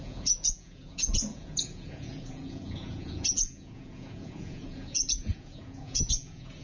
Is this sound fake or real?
fake